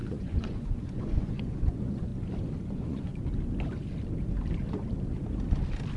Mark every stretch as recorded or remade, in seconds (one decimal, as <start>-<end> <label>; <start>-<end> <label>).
0.0-2.1 remade; 2.1-2.7 recorded; 2.7-3.1 remade; 3.1-6.0 recorded